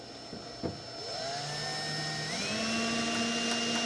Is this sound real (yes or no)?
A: yes